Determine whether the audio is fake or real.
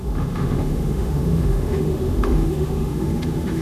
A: fake